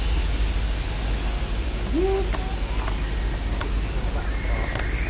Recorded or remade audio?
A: recorded